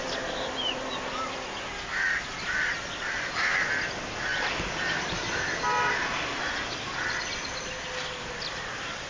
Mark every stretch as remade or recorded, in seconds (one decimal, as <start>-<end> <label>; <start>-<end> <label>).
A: 0.0-9.1 recorded